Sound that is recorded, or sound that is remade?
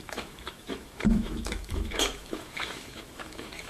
remade